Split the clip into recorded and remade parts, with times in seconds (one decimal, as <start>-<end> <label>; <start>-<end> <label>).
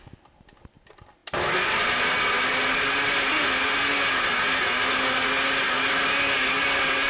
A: 0.0-7.1 recorded